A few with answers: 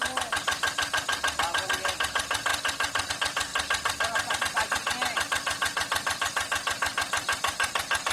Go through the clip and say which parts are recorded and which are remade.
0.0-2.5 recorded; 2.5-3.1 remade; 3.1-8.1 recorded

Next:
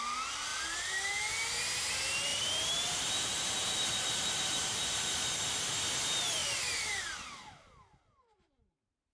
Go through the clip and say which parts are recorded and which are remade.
0.0-0.5 recorded; 0.5-1.3 remade; 1.3-2.3 recorded; 2.3-5.3 remade; 5.3-6.4 recorded; 6.4-7.0 remade; 7.0-9.1 recorded

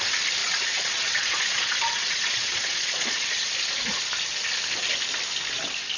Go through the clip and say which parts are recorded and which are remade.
0.0-0.4 recorded; 0.4-3.5 remade; 3.5-6.0 recorded